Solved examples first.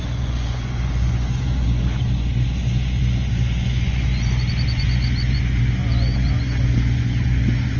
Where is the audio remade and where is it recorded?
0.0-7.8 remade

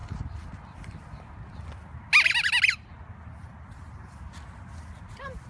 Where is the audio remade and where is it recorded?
0.0-1.6 remade; 1.6-5.5 recorded

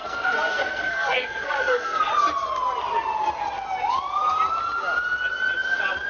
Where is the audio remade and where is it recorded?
0.0-2.1 remade; 2.1-6.1 recorded

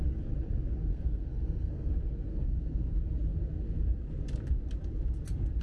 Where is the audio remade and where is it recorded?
0.0-0.9 recorded; 0.9-1.9 remade; 1.9-2.3 recorded; 2.3-2.8 remade; 2.8-5.6 recorded

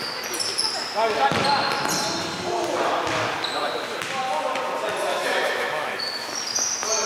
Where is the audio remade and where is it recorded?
0.0-5.1 recorded; 5.1-6.0 remade; 6.0-7.1 recorded